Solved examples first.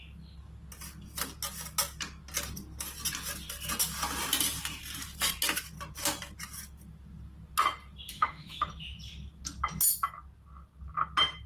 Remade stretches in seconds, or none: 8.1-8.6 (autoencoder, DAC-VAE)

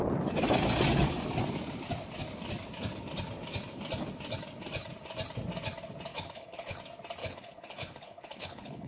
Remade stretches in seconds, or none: 6.1-6.8 (codec, HILCodec); 7.2-8.9